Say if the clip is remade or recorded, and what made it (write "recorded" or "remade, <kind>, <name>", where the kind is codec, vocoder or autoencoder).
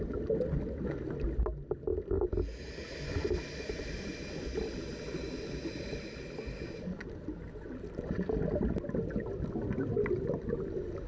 recorded